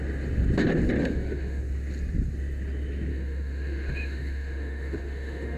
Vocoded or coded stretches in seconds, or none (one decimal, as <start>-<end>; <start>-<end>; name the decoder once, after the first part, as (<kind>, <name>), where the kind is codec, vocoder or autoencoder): 1.0-1.6 (autoencoder, DAC-VAE); 3.1-5.6